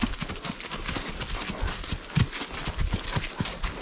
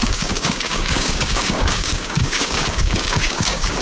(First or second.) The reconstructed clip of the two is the second